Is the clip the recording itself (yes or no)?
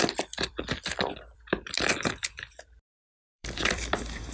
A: no